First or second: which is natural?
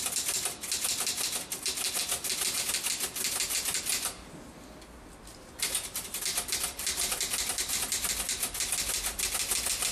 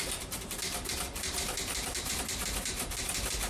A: first